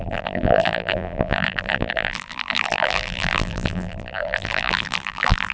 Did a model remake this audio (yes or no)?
yes